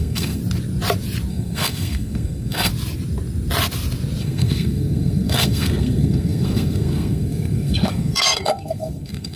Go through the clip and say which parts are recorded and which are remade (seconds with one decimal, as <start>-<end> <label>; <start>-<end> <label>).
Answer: 0.0-0.4 remade; 0.4-1.3 recorded; 1.3-2.7 remade; 2.7-4.2 recorded; 4.2-9.4 remade